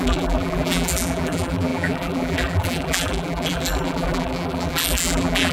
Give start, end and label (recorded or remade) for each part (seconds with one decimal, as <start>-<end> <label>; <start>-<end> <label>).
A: 0.0-5.5 remade